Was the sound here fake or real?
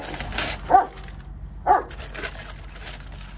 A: real